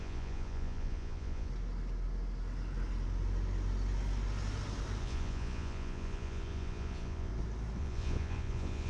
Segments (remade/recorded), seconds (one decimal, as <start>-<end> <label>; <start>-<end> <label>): 0.0-1.5 remade; 1.5-5.0 recorded; 5.0-7.3 remade; 7.3-7.8 recorded; 7.8-8.9 remade